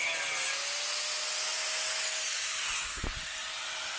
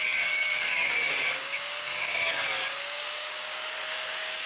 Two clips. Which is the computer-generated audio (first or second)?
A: second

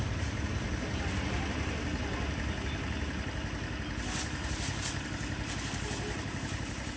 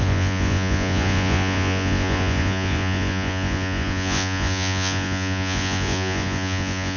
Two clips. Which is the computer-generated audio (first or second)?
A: second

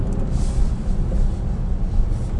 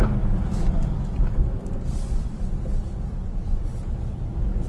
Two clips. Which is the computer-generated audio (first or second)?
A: second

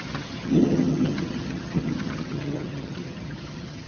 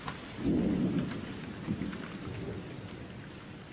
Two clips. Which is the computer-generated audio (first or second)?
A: first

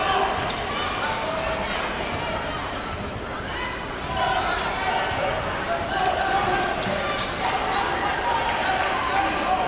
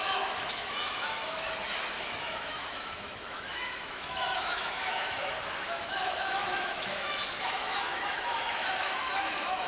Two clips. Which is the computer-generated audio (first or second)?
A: second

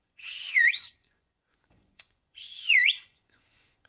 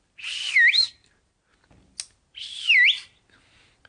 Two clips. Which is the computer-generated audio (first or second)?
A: first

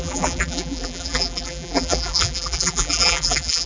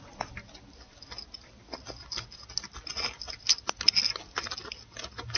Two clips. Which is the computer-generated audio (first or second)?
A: first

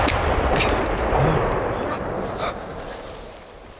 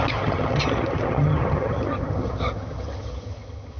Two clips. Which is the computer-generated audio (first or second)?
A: second